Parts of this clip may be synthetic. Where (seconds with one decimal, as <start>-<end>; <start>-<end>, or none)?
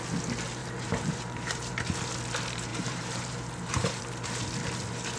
0.6-1.7; 2.7-4.0